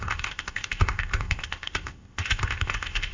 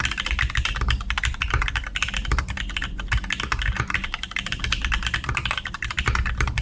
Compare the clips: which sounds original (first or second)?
second